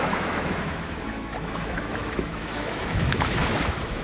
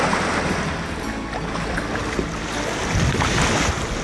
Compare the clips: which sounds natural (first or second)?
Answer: second